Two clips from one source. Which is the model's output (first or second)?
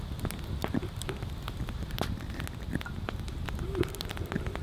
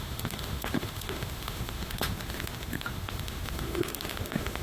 second